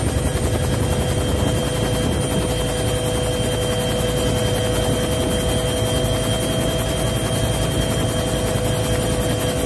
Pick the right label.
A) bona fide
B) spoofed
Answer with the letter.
A